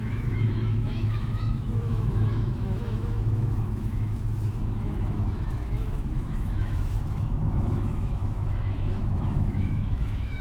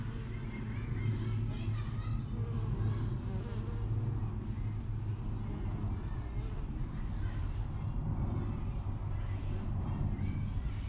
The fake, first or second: first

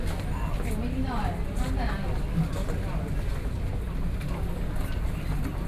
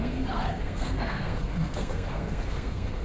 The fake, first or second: second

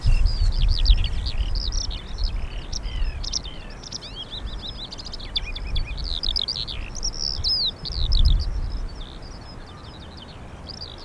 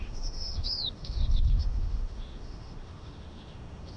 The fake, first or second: second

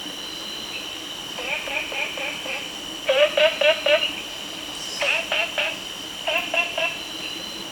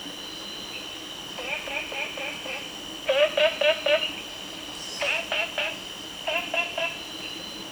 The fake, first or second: first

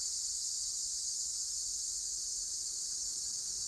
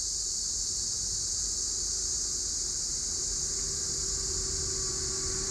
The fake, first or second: first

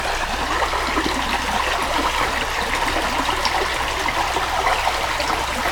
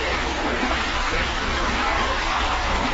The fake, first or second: second